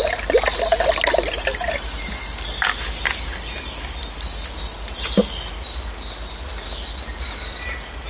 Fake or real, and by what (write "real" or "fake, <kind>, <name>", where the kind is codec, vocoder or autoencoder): real